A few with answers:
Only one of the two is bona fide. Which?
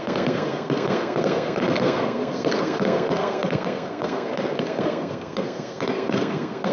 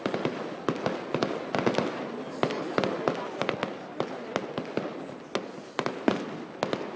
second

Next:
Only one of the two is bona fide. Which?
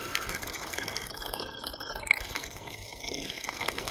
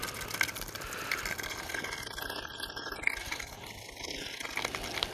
second